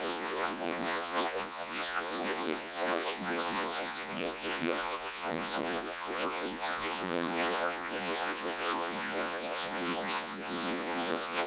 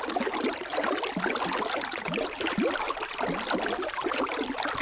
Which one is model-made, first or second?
first